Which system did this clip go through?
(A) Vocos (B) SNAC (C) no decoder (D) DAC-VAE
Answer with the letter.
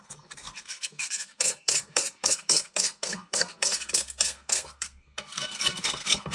B